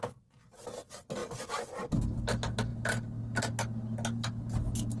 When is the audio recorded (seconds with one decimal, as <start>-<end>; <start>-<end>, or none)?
0.0-1.2; 2.2-2.7; 3.2-5.0